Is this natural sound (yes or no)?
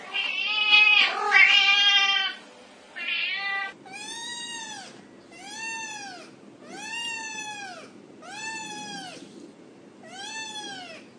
yes